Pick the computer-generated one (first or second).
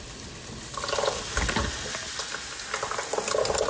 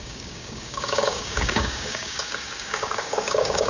second